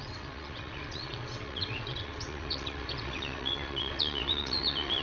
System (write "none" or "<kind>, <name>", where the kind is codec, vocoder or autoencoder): vocoder, WaveNeXt